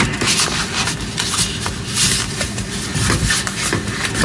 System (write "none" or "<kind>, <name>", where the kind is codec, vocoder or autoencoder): none